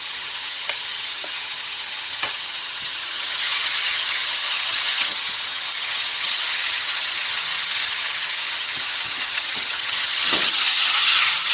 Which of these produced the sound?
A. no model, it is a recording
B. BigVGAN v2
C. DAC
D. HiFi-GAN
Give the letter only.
D